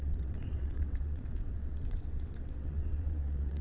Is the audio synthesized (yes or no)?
yes